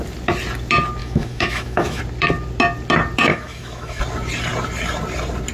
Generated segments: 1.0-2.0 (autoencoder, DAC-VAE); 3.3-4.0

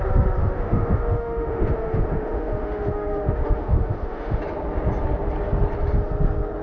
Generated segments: 0.4-4.4 (autoencoder, DAC-VAE)

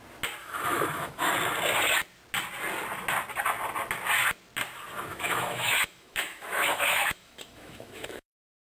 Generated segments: 0.4-1.3 (autoencoder, DAC-VAE); 5.1-8.8